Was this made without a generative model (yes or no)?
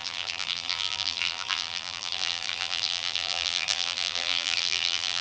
no